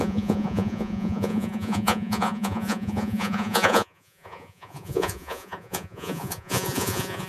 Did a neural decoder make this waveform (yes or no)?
yes